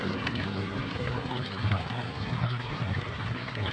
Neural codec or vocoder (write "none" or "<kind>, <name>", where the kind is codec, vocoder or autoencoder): codec, SNAC